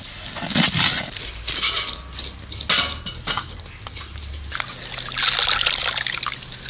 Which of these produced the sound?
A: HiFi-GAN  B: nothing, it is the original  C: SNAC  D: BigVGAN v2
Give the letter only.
B